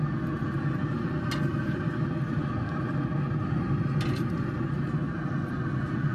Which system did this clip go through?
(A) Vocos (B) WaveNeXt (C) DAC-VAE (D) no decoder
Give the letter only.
D